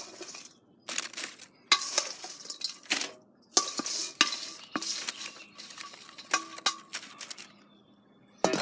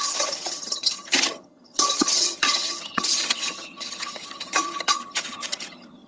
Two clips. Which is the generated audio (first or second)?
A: second